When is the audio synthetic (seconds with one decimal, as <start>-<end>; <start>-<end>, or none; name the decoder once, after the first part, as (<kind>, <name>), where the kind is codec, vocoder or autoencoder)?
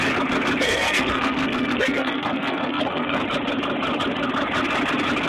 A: 0.6-3.2 (codec, SNAC)